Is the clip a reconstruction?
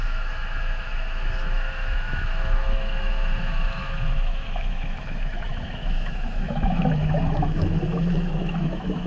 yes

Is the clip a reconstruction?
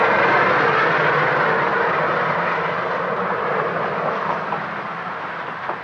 no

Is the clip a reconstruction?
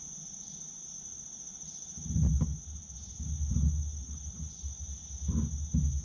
no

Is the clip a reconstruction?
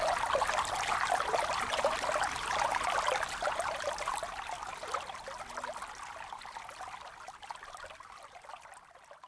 no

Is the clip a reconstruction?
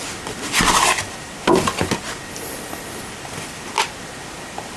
no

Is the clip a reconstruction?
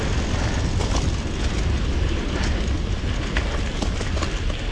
no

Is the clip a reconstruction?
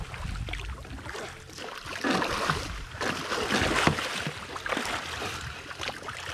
no